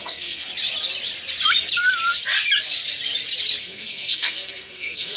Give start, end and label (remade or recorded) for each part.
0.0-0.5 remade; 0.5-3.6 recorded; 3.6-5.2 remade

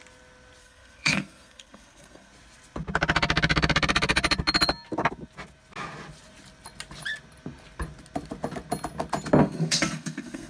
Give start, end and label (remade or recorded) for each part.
0.0-0.6 recorded; 0.6-2.3 remade; 2.3-9.4 recorded; 9.4-10.5 remade

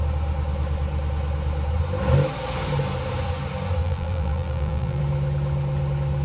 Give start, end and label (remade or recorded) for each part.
0.0-3.8 recorded; 3.8-5.0 remade; 5.0-6.2 recorded

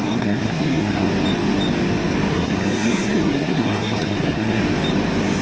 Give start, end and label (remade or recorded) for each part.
0.0-1.1 remade; 1.1-2.3 recorded; 2.3-4.6 remade; 4.6-5.4 recorded

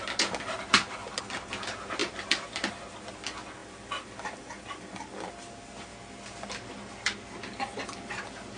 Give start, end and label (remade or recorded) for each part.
0.0-8.6 recorded

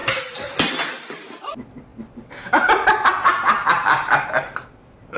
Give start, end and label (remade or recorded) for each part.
0.0-1.9 recorded; 1.9-5.2 remade

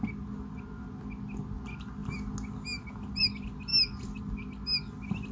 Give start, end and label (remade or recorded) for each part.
0.0-5.3 recorded